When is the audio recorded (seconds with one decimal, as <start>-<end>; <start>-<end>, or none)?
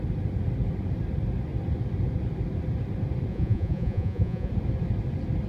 0.0-3.3; 4.5-5.5